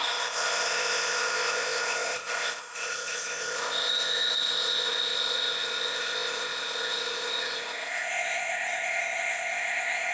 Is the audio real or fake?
fake